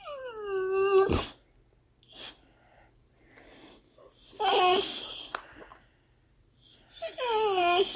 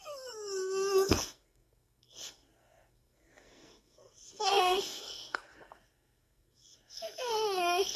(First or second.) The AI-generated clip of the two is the second